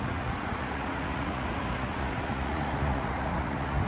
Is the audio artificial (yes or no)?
yes